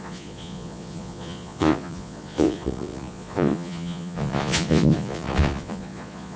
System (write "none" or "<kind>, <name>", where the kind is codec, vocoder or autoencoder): vocoder, Vocos